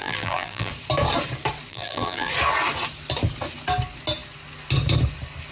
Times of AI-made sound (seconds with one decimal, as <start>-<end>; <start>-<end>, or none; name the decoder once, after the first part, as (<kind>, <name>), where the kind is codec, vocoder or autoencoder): 0.0-0.7 (vocoder, BigVGAN v2); 1.7-2.3